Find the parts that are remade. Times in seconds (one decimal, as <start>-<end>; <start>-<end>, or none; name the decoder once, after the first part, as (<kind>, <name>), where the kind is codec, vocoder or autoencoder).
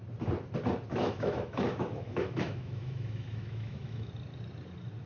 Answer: 1.0-4.1 (autoencoder, DAC-VAE)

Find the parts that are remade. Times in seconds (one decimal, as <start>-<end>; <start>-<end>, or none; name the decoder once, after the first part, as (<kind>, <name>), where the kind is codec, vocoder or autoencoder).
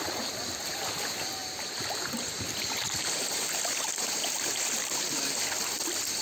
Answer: 1.4-5.1 (vocoder, BigVGAN v2)